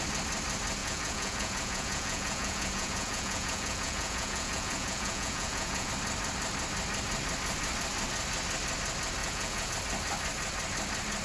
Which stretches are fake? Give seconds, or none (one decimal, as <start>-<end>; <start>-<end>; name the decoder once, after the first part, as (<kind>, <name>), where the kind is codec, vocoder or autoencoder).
0.8-5.9 (vocoder, Vocos); 9.2-9.7